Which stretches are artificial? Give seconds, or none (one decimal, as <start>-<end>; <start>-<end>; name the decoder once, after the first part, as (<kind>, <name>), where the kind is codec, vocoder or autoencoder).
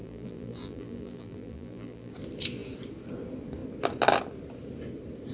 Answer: 0.0-2.1 (vocoder, BigVGAN v2)